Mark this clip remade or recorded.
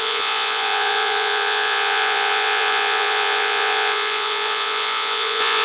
remade